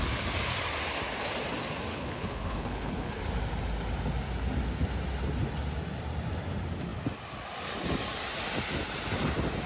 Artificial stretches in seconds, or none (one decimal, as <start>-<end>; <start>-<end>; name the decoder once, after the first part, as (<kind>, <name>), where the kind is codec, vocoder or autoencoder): 1.9-3.2 (codec, HILCodec)